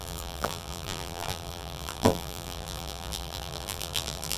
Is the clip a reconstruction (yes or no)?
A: yes